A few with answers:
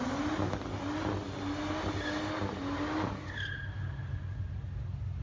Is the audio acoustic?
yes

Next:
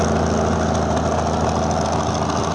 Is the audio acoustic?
yes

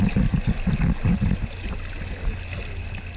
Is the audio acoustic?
yes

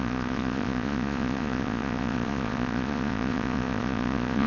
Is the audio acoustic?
no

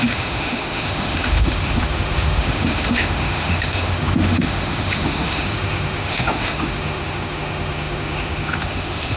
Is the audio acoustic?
no